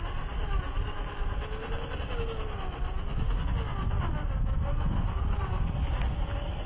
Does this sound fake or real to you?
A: real